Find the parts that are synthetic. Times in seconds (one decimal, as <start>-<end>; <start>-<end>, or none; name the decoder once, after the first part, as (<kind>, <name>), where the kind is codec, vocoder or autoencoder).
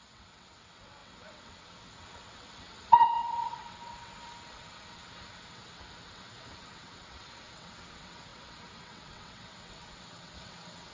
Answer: 0.0-10.9 (vocoder, WaveNeXt)